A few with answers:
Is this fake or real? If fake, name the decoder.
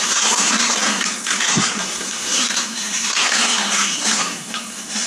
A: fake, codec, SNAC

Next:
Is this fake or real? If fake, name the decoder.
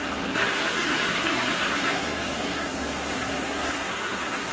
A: fake, codec, SNAC